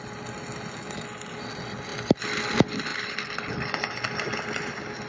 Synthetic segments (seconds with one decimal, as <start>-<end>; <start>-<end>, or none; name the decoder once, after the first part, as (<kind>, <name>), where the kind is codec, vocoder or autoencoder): none